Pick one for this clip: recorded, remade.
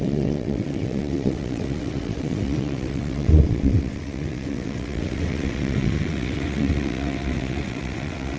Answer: remade